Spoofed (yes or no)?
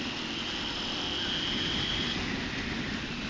no